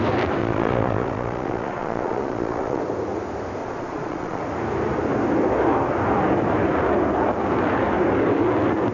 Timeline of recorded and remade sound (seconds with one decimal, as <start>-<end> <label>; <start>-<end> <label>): 0.0-0.4 recorded; 0.4-2.8 remade; 2.8-3.6 recorded; 3.6-4.4 remade; 4.4-8.9 recorded